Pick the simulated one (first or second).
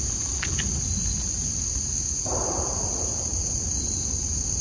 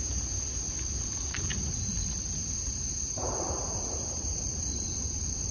second